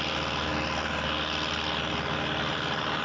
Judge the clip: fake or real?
real